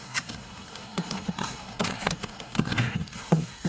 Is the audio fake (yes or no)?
yes